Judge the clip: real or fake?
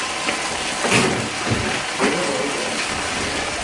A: real